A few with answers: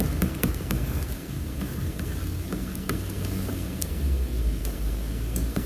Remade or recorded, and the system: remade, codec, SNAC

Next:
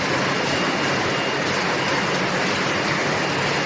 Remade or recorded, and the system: recorded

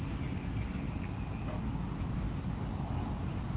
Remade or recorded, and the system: recorded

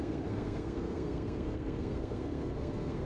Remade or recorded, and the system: remade, codec, SNAC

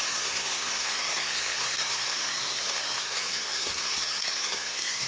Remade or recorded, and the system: remade, codec, SNAC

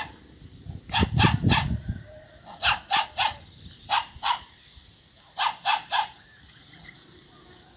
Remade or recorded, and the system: recorded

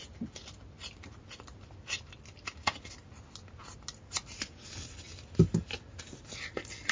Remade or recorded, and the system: recorded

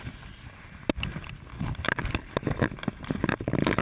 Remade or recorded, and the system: recorded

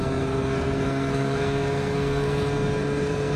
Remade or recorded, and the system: remade, codec, SNAC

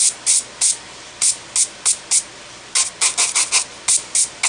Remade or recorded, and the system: recorded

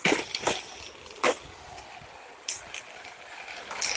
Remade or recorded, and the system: recorded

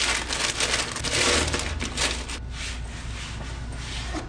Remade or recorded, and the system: recorded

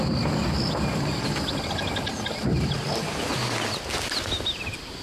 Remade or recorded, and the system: recorded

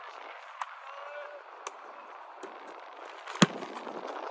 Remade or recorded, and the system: recorded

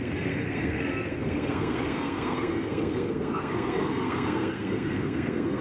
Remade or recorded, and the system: remade, codec, SNAC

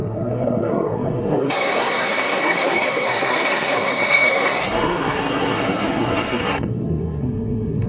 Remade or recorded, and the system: remade, codec, SNAC